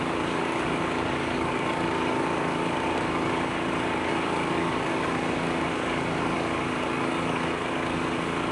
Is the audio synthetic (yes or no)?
yes